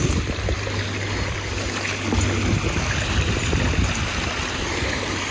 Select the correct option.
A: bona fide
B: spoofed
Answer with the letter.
A